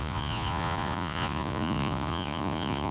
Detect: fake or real fake